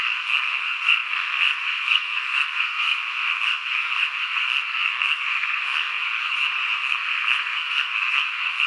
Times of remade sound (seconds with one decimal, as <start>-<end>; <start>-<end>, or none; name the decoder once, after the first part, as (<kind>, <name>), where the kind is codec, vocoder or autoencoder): 0.0-6.3 (codec, SNAC); 6.8-8.7